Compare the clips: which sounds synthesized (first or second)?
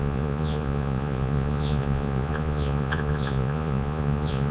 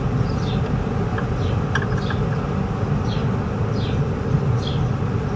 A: first